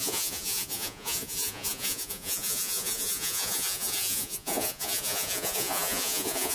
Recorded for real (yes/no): no